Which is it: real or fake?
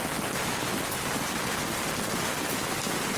real